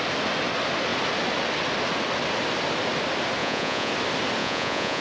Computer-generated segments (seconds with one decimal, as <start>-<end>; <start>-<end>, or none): 3.4-3.9; 4.4-5.0